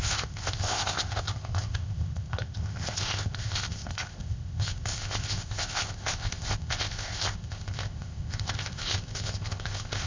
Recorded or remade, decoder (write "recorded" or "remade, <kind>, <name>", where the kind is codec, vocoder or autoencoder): remade, codec, ZipCodec